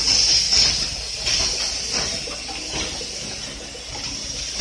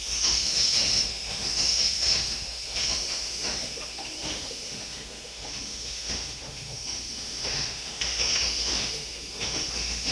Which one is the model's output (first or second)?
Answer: second